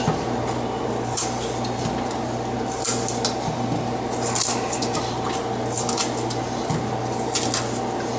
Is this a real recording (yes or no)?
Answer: yes